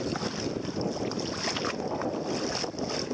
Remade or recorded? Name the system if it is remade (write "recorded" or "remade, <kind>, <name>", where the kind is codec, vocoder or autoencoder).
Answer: recorded